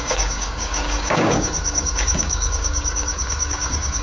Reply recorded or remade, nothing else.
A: remade